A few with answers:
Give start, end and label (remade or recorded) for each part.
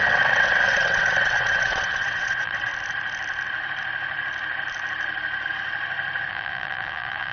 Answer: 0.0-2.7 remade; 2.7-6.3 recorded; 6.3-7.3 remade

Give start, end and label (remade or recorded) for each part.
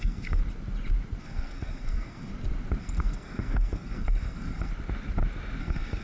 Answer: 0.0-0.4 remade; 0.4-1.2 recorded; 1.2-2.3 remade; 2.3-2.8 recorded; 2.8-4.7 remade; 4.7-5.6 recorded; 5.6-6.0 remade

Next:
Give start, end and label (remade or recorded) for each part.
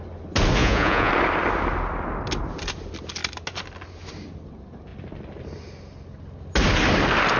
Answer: 0.0-0.6 recorded; 0.6-1.1 remade; 1.1-7.4 recorded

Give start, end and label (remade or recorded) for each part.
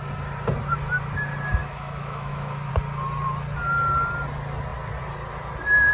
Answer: 0.0-1.6 recorded; 1.6-2.7 remade; 2.7-5.9 recorded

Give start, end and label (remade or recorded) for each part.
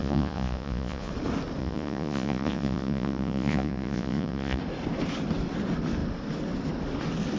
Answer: 0.0-1.1 remade; 1.1-1.6 recorded; 1.6-4.6 remade; 4.6-7.4 recorded